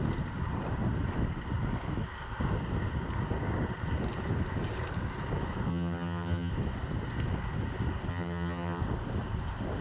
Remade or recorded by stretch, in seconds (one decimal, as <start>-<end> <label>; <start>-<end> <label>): 0.0-5.7 recorded; 5.7-6.5 remade; 6.5-8.1 recorded; 8.1-8.8 remade; 8.8-9.8 recorded